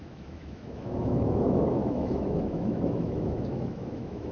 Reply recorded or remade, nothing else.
remade